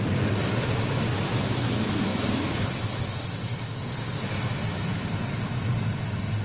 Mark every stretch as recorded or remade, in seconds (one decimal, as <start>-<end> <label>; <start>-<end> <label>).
0.0-2.1 recorded; 2.1-2.7 remade; 2.7-3.5 recorded; 3.5-4.2 remade; 4.2-6.4 recorded